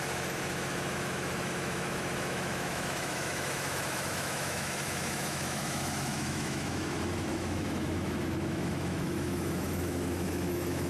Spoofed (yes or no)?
yes